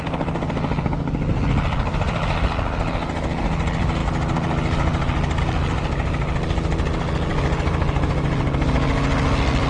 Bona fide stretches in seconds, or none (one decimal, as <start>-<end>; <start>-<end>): 0.0-9.7